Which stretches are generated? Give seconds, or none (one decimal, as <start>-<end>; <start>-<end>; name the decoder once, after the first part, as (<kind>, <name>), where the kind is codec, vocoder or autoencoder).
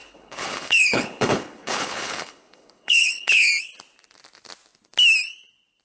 0.0-3.5 (codec, HILCodec)